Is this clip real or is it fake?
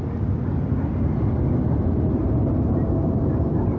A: real